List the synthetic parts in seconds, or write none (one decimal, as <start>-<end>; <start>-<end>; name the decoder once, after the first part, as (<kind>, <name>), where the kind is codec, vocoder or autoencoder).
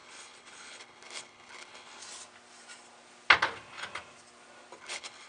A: 0.0-2.0 (codec, HILCodec); 4.8-5.3